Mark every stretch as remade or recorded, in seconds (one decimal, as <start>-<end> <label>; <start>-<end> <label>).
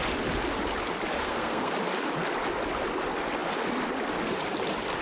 0.0-1.2 recorded; 1.2-1.7 remade; 1.7-5.0 recorded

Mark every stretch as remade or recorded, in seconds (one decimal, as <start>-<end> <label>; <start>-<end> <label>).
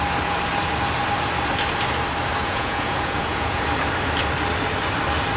0.0-2.4 recorded; 2.4-3.6 remade; 3.6-5.4 recorded